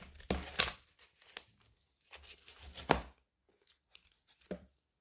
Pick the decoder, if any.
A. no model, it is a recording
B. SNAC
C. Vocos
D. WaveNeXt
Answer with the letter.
A